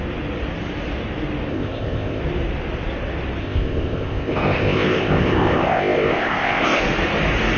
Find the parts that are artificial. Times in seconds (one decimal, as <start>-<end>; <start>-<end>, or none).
1.5-2.2; 3.4-6.8